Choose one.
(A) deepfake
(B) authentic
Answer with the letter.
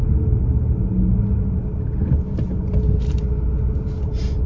B